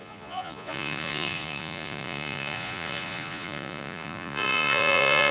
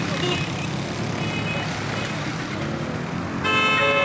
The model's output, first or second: first